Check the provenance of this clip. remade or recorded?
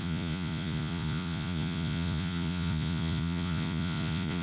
remade